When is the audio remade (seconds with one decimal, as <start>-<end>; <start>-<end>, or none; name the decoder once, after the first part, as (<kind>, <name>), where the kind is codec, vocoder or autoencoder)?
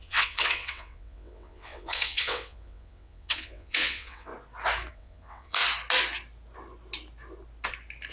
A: 0.0-4.3 (vocoder, WaveNeXt); 4.9-5.6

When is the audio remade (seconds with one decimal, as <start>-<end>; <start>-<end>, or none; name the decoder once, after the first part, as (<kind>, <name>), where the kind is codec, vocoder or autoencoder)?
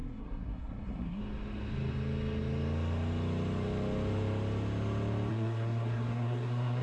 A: 0.0-1.2 (codec, SNAC); 5.3-6.8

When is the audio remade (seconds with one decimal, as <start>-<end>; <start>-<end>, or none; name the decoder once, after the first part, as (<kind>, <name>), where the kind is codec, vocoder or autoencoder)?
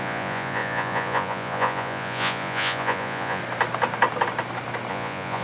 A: 0.0-3.4 (vocoder, Vocos); 4.9-5.4